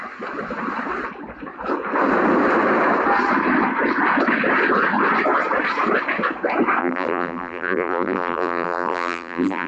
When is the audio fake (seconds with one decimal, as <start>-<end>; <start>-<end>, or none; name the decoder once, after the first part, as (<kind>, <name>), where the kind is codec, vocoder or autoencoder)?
6.8-9.7 (vocoder, BigVGAN v2)